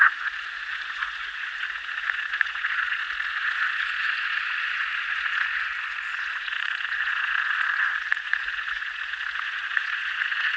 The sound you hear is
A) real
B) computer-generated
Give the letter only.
B